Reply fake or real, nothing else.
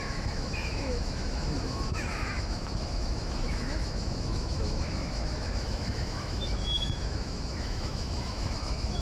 fake